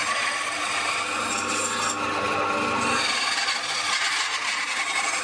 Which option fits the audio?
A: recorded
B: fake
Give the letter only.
A